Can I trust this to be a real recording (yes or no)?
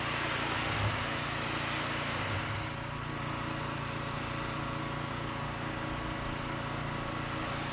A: yes